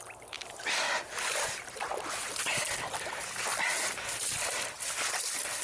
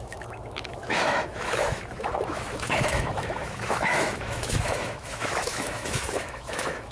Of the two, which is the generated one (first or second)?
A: second